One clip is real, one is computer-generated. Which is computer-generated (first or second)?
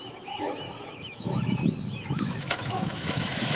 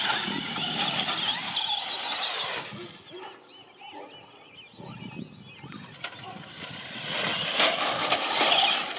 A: first